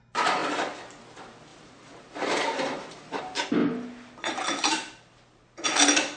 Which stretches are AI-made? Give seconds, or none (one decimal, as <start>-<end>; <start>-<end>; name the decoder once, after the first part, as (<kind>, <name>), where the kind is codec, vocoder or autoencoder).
1.5-3.2 (vocoder, BigVGAN v2)